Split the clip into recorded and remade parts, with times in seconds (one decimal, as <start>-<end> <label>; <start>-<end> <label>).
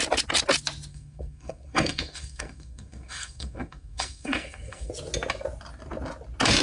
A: 0.0-0.9 recorded; 0.9-4.9 remade; 4.9-6.6 recorded